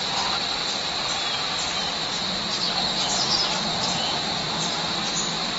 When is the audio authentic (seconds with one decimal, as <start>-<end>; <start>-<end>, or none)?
0.0-5.6